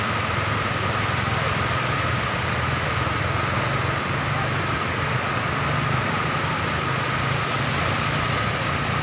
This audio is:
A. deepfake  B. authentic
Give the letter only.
B